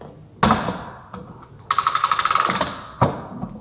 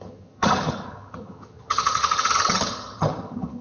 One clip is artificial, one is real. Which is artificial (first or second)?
second